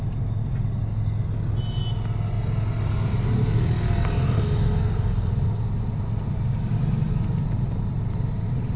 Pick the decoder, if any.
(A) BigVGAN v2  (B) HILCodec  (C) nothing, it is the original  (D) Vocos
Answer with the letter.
C